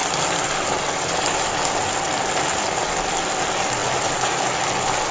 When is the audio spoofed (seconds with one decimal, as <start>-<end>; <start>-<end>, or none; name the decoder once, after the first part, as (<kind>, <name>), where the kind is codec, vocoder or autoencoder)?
none